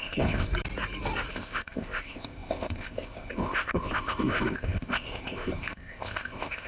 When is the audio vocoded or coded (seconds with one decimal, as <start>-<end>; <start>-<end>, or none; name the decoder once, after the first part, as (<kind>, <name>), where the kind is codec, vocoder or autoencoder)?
0.0-0.5 (codec, ZipCodec); 1.3-6.7